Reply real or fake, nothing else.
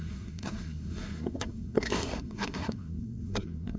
fake